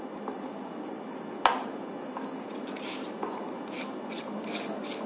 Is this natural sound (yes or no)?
yes